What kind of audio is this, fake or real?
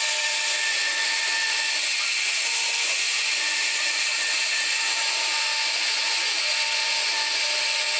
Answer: fake